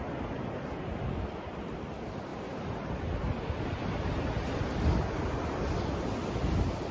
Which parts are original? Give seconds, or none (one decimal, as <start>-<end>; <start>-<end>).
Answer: 0.0-6.9

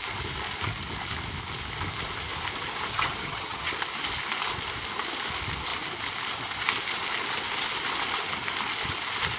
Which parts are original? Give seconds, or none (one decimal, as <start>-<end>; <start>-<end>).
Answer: 0.0-2.9; 3.7-9.4

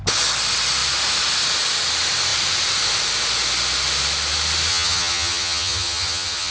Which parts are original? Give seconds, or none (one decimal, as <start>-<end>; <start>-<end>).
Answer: 0.0-4.7

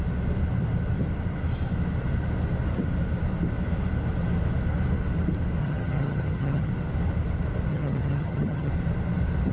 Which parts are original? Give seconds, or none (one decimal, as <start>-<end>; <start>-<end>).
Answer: 0.0-5.6; 6.7-7.7; 8.7-9.5

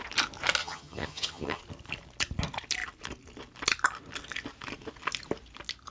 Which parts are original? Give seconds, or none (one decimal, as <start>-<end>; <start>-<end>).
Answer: 0.0-0.6; 1.6-5.9

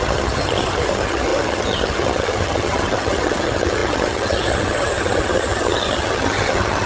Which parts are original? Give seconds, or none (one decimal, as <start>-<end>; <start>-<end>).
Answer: none

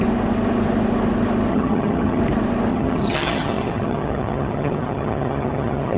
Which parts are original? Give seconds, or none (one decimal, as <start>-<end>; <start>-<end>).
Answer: 0.0-1.5; 2.2-2.7